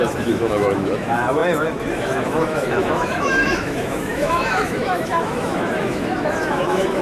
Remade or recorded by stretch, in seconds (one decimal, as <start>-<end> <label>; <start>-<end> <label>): 0.0-7.0 remade

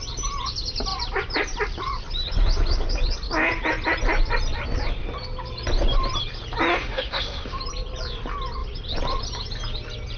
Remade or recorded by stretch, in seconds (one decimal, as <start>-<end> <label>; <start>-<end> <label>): 0.0-6.8 recorded; 6.8-7.6 remade; 7.6-10.2 recorded

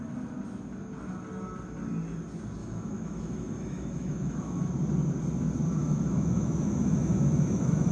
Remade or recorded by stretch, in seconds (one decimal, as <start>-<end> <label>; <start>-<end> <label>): 0.0-2.6 recorded; 2.6-4.7 remade; 4.7-5.8 recorded; 5.8-7.9 remade